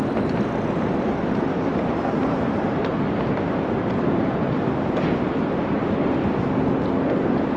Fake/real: real